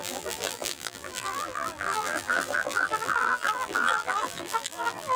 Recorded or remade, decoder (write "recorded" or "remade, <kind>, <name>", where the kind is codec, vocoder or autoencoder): remade, vocoder, BigVGAN v2